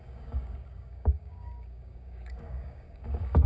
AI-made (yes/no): yes